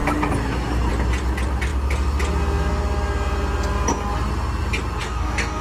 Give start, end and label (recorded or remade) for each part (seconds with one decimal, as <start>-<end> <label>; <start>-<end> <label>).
0.0-5.0 recorded; 5.0-5.6 remade